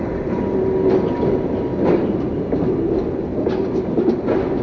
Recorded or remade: recorded